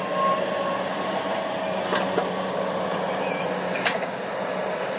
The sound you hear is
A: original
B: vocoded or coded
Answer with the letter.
A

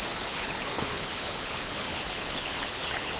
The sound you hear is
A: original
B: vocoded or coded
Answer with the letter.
B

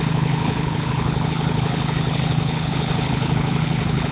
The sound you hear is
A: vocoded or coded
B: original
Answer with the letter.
A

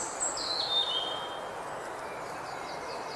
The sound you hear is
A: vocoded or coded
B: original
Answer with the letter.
B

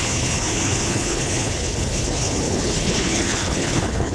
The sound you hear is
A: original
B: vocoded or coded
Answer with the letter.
B